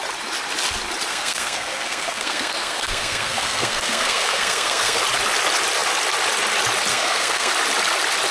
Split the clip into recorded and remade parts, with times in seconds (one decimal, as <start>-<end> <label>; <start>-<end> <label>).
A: 0.0-1.1 recorded; 1.1-5.0 remade; 5.0-6.9 recorded; 6.9-7.5 remade; 7.5-8.3 recorded